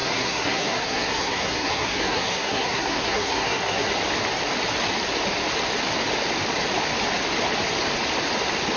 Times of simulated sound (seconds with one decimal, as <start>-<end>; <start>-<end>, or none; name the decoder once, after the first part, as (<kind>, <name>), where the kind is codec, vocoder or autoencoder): 0.0-3.9 (codec, SNAC)